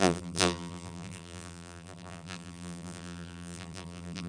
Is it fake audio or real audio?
fake